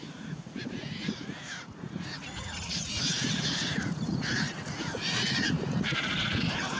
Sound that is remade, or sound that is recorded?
remade